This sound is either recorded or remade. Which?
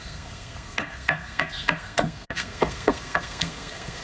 remade